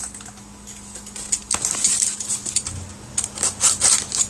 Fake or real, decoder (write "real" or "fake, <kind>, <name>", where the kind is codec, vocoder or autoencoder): real